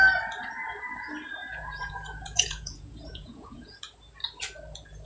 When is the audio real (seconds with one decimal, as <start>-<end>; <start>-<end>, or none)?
0.0-1.4; 3.8-5.1